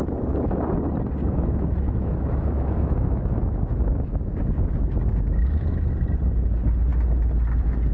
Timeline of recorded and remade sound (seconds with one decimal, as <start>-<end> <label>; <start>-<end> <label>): 0.0-1.2 recorded; 1.2-5.9 remade; 5.9-7.9 recorded